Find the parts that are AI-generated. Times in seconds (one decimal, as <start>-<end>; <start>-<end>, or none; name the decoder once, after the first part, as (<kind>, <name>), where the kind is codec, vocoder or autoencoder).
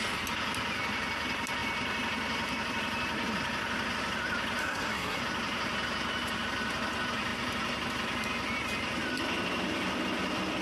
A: 4.6-5.2 (codec, SNAC)